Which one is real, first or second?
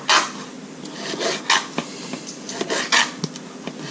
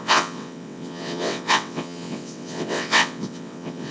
first